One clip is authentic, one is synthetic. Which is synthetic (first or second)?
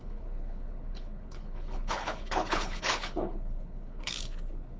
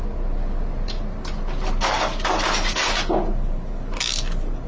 first